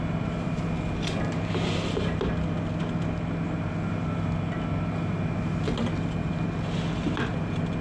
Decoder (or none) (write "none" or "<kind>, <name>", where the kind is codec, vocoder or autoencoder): none